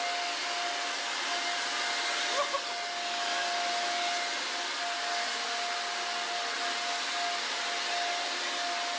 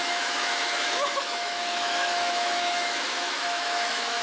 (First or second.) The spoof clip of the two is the second